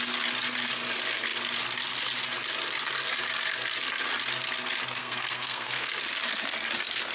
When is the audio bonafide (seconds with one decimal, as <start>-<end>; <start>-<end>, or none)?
0.0-5.0; 5.9-7.1